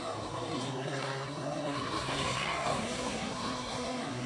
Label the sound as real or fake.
fake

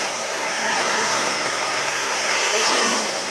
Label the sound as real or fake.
fake